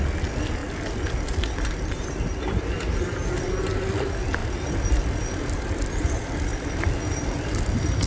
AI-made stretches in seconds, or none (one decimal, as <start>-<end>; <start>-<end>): none